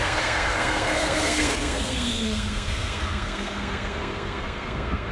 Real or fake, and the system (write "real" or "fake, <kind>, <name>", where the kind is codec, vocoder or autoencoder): fake, codec, SNAC